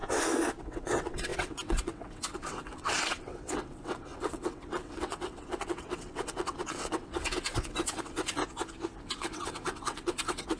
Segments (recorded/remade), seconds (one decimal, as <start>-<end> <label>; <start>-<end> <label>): 0.0-0.6 recorded; 0.6-8.4 remade; 8.4-9.0 recorded; 9.0-10.6 remade